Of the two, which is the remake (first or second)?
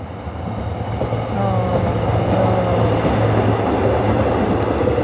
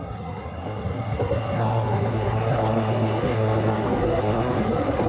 second